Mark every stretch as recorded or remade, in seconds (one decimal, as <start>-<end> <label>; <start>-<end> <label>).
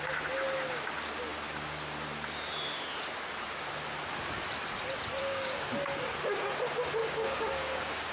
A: 0.0-5.2 recorded; 5.2-6.0 remade; 6.0-7.0 recorded; 7.0-8.1 remade